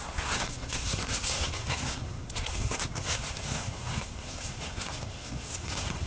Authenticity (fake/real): fake